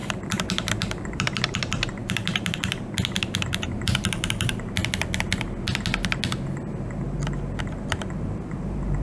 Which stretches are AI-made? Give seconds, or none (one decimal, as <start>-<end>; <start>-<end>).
0.0-4.8; 7.6-9.0